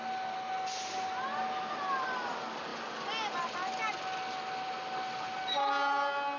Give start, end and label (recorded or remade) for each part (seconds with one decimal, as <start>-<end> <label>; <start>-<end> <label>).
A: 0.0-6.4 recorded